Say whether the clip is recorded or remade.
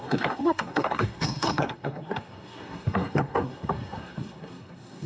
remade